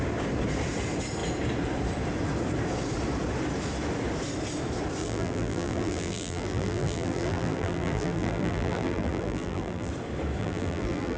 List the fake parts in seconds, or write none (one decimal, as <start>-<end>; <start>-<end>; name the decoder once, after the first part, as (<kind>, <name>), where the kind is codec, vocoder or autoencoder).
5.0-9.9 (vocoder, BigVGAN v2); 10.4-11.2